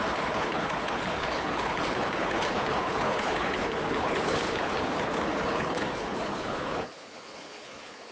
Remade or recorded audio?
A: remade